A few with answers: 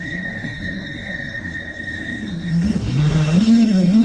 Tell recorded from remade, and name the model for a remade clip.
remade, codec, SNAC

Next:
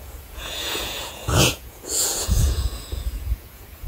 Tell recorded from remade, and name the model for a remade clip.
remade, vocoder, Vocos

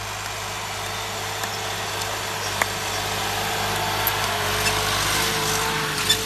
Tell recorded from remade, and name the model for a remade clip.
recorded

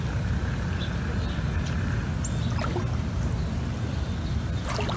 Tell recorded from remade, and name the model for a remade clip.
recorded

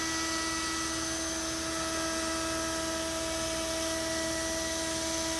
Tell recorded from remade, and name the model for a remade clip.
recorded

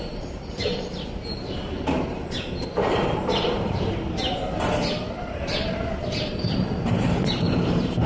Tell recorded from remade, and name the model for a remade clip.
remade, vocoder, BigVGAN v2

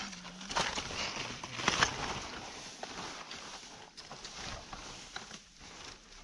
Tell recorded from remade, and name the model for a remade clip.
recorded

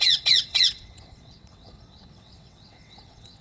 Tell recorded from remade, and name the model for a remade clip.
remade, vocoder, WaveNeXt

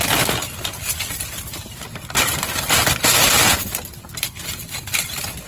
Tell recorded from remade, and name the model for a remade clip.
recorded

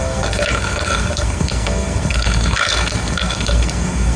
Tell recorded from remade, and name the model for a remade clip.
remade, codec, SNAC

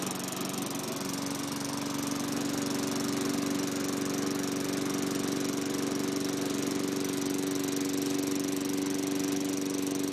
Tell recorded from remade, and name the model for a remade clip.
recorded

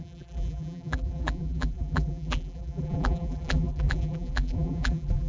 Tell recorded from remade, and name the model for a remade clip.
remade, vocoder, BigVGAN v2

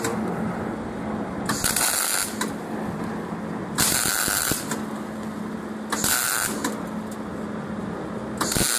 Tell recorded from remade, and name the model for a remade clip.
recorded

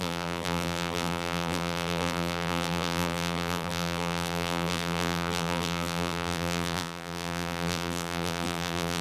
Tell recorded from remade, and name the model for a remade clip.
remade, vocoder, BigVGAN v2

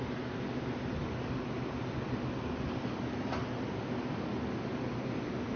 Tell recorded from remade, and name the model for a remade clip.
recorded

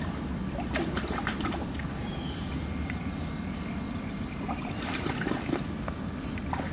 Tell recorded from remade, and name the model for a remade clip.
recorded